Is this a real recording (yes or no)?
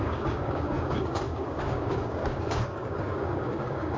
no